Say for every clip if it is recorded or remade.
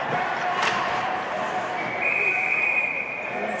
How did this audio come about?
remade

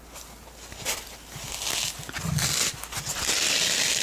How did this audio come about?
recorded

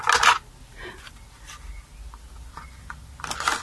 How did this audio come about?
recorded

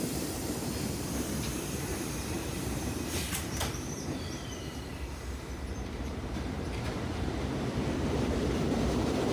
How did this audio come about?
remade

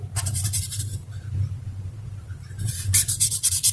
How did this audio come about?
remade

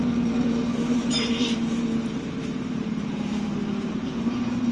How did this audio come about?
remade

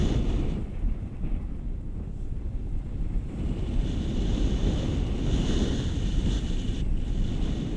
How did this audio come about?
remade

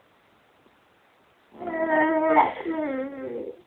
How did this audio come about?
recorded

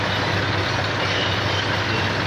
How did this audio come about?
recorded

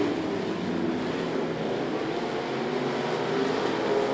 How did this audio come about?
recorded